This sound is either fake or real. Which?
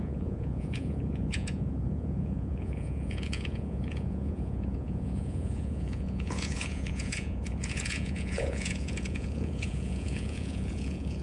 fake